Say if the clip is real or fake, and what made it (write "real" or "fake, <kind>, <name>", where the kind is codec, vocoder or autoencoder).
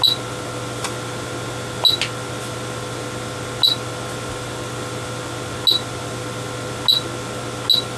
real